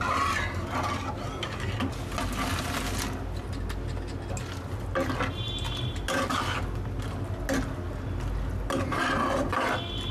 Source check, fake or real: real